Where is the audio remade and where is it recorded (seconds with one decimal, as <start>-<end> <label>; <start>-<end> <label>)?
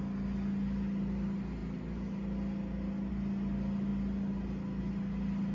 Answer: 0.0-5.5 recorded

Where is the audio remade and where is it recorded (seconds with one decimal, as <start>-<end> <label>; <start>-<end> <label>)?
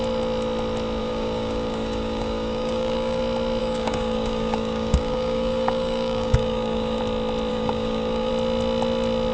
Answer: 0.0-1.0 recorded; 1.0-3.2 remade; 3.2-3.6 recorded; 3.6-7.0 remade; 7.0-7.5 recorded; 7.5-8.3 remade; 8.3-9.3 recorded